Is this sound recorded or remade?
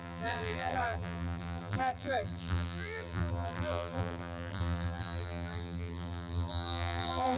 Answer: remade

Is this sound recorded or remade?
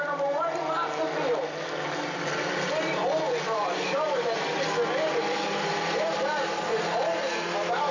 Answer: recorded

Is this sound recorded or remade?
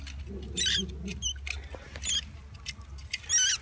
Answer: recorded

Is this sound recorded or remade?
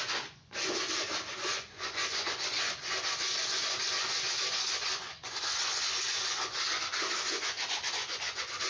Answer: remade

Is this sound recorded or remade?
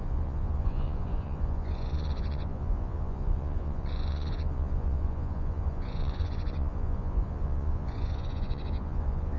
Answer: remade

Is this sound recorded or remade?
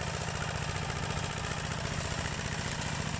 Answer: recorded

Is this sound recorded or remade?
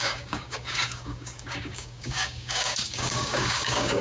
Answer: remade